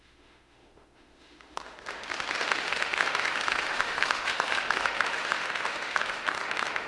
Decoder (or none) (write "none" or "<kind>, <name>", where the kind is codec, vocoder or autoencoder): autoencoder, DAC-VAE